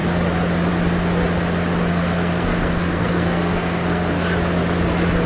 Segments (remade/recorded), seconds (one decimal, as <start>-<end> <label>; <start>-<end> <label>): 0.0-1.9 recorded; 1.9-4.2 remade; 4.2-5.3 recorded